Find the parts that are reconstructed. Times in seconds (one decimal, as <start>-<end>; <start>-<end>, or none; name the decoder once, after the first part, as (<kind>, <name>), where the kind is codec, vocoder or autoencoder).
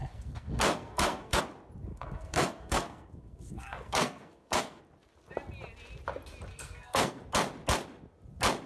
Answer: 0.0-1.4 (codec, SNAC); 1.9-4.8; 6.5-7.2